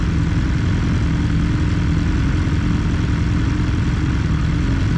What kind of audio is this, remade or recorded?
recorded